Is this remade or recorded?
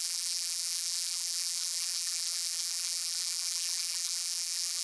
remade